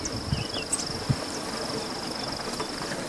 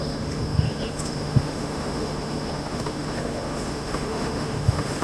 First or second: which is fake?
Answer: second